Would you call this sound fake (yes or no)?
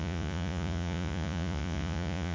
yes